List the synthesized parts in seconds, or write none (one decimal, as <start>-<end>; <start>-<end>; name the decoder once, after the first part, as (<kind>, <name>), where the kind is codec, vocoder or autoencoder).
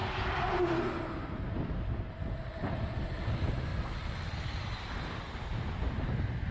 none